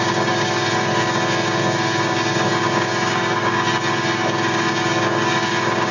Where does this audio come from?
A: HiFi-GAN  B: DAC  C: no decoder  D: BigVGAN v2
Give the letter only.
B